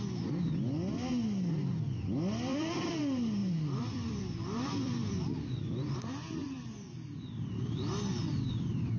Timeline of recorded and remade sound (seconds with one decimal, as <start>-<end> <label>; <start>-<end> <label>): 0.0-2.5 recorded; 2.5-3.0 remade; 3.0-3.4 recorded; 3.4-7.9 remade; 7.9-9.0 recorded